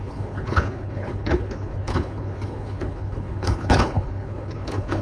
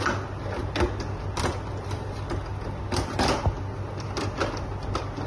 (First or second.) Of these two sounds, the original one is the second